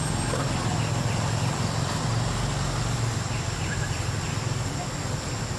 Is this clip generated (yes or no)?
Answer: no